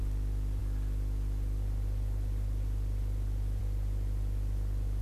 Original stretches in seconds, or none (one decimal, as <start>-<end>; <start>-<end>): 0.0-5.0